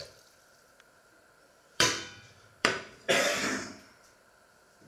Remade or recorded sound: remade